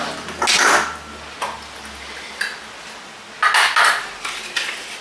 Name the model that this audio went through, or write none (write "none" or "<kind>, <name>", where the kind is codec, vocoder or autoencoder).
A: none